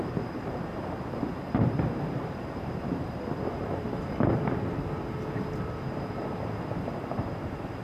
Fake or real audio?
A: fake